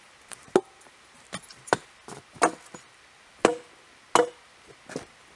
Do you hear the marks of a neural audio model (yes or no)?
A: no